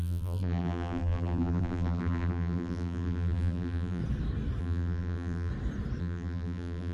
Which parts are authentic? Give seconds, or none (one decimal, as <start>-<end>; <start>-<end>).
4.0-4.6; 5.5-6.0